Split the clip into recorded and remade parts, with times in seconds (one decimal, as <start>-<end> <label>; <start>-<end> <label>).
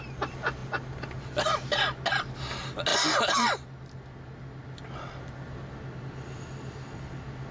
0.0-7.5 recorded